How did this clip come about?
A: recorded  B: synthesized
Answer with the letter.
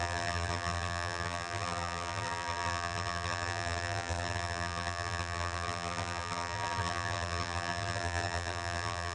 B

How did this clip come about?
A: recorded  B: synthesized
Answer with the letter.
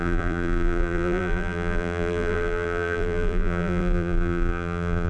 B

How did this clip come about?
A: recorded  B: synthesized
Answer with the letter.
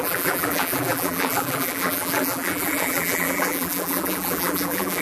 B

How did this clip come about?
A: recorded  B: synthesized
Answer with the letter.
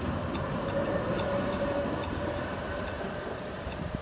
B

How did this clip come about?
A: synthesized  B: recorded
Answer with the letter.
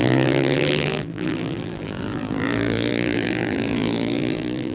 A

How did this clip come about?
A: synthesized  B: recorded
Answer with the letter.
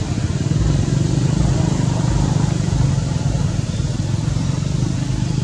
B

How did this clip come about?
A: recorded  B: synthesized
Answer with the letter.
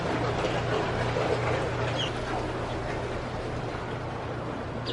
A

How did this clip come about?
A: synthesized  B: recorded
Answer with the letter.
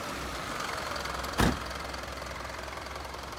A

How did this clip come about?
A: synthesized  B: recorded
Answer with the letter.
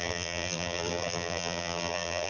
A